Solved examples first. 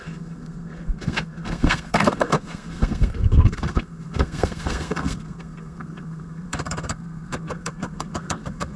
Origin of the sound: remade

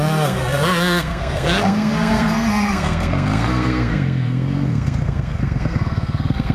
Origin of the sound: remade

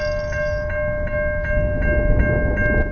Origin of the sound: recorded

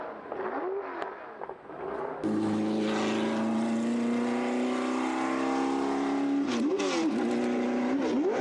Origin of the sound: recorded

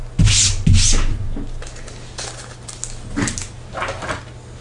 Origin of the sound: recorded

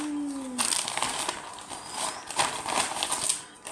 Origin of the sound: recorded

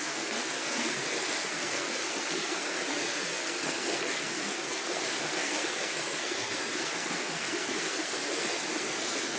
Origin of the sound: remade